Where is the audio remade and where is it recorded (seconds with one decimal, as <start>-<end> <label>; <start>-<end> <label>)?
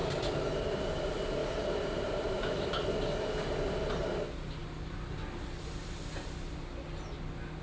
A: 0.0-1.4 recorded; 1.4-2.7 remade; 2.7-7.6 recorded